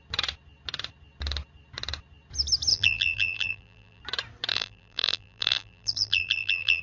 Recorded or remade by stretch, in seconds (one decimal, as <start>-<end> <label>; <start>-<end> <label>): 0.0-2.7 recorded; 2.7-4.0 remade; 4.0-4.5 recorded; 4.5-6.8 remade